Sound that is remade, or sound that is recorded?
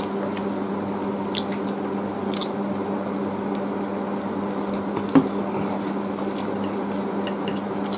recorded